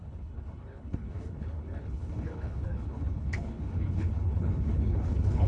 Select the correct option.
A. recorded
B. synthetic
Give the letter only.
B